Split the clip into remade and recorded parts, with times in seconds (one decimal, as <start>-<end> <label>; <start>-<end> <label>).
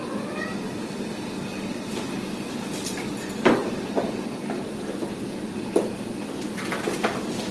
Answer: 0.0-3.6 recorded; 3.6-4.6 remade; 4.6-7.5 recorded